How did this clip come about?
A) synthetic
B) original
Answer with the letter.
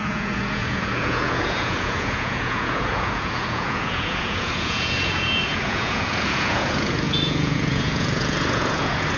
A